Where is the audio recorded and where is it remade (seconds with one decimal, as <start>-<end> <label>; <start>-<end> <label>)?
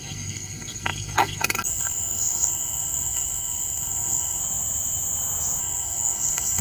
0.0-4.4 remade; 4.4-5.6 recorded; 5.6-6.6 remade